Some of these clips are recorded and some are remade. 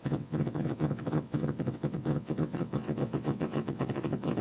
remade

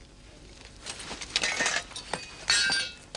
recorded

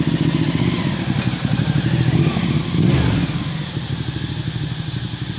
recorded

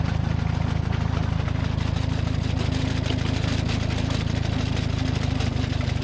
recorded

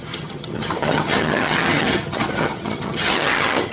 remade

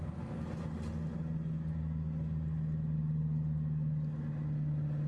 recorded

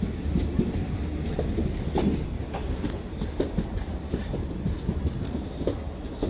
recorded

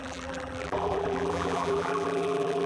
remade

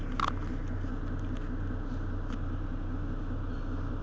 recorded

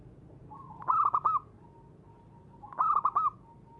recorded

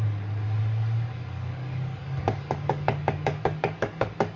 remade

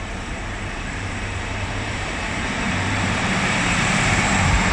remade